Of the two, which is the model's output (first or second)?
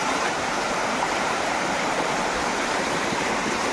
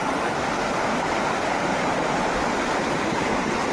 first